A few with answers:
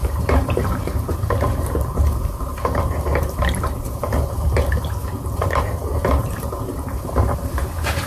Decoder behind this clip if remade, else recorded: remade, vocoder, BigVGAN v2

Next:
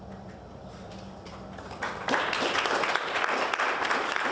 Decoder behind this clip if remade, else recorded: recorded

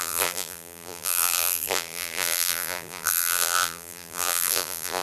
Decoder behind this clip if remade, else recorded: remade, vocoder, BigVGAN v2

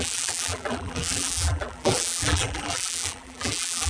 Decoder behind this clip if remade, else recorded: remade, vocoder, BigVGAN v2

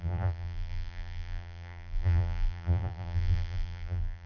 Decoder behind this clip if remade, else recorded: remade, vocoder, BigVGAN v2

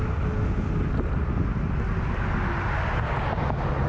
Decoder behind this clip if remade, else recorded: recorded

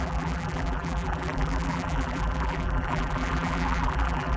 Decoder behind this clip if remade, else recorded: remade, vocoder, BigVGAN v2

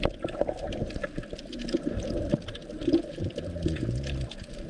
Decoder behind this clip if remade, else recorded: recorded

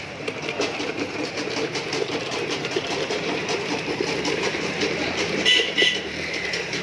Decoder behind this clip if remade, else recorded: remade, vocoder, BigVGAN v2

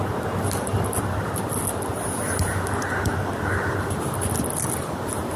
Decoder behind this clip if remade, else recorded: recorded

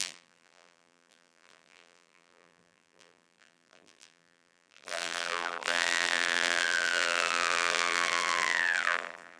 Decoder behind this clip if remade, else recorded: remade, vocoder, BigVGAN v2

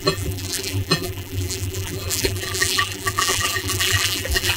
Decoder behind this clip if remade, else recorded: remade, vocoder, BigVGAN v2